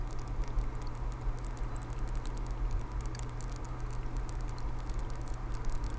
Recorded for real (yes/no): yes